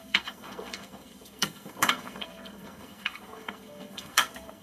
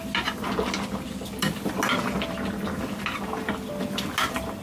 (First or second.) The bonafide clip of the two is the second